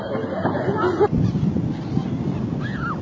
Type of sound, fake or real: real